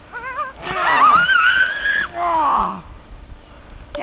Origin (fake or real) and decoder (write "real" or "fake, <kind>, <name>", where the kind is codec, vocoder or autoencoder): real